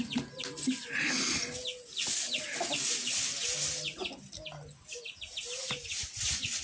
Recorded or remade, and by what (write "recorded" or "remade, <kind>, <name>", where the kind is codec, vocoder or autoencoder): recorded